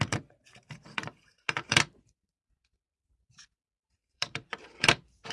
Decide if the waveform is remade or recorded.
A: remade